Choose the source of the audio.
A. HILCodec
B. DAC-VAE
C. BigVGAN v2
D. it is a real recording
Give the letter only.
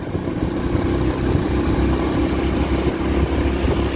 D